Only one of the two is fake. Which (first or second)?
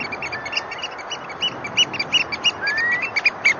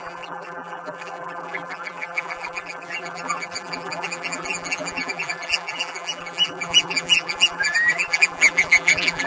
second